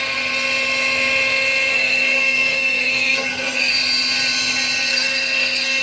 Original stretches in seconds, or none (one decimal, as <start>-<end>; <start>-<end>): 0.0-1.7; 3.7-4.9